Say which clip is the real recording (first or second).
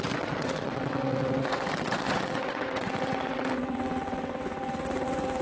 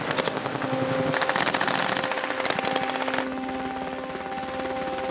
second